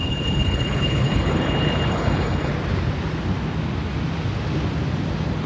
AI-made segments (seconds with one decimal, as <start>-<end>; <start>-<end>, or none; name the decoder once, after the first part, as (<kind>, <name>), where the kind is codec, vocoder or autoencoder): 0.0-2.5 (codec, HILCodec)